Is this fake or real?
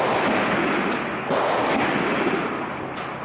real